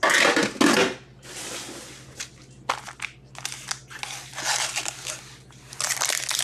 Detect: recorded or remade recorded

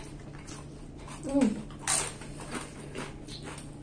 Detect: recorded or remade recorded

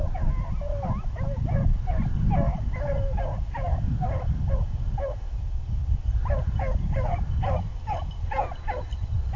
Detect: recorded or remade recorded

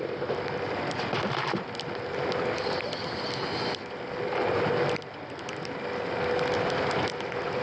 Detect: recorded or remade recorded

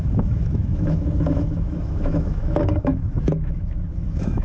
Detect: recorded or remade remade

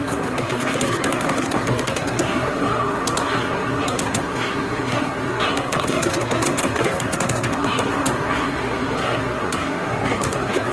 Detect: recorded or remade remade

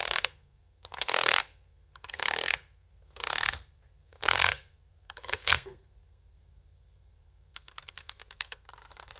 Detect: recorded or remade remade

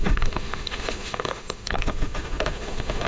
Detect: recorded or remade remade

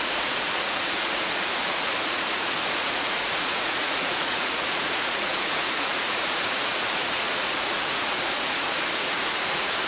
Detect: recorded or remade remade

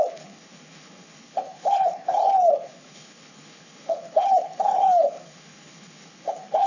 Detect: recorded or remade remade